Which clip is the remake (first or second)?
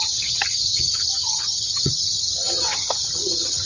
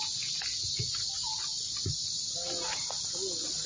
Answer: first